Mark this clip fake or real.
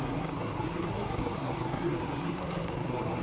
fake